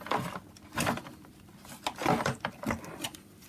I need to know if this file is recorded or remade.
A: recorded